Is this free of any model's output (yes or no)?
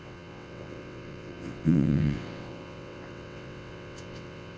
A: no